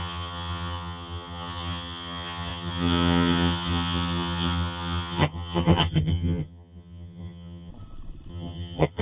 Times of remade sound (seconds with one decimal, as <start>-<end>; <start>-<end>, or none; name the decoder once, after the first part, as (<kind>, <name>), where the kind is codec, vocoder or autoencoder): 0.0-7.7 (vocoder, HiFi-GAN); 8.3-9.0